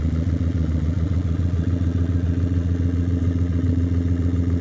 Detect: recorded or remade remade